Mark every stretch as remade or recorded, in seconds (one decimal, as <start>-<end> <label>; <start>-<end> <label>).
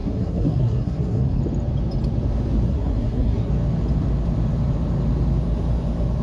0.0-1.4 remade; 1.4-2.7 recorded; 2.7-3.5 remade; 3.5-6.2 recorded